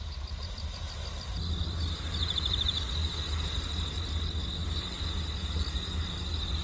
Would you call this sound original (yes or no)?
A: yes